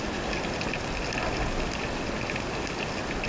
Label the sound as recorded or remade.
recorded